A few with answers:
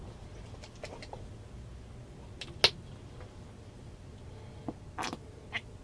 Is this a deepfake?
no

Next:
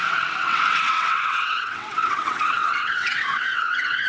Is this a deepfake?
yes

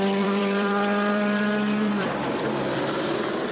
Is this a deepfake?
yes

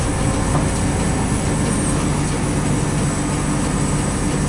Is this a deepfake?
no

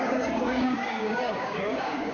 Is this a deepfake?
yes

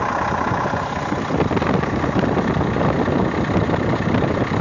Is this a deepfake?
no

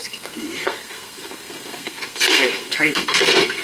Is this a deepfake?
yes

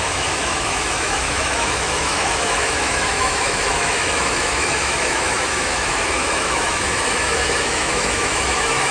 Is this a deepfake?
yes